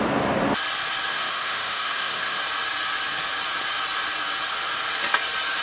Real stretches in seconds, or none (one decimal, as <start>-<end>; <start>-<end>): 0.0-1.1; 2.4-5.6